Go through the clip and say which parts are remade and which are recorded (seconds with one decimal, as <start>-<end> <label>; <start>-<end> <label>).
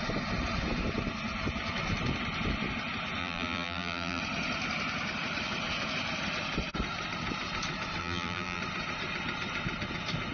0.0-3.2 recorded; 3.2-4.2 remade; 4.2-8.0 recorded; 8.0-8.6 remade; 8.6-10.3 recorded